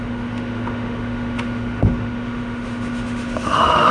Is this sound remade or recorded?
remade